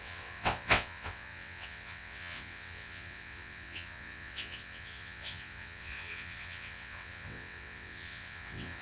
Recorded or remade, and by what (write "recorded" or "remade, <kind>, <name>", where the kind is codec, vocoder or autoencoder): remade, vocoder, WaveNeXt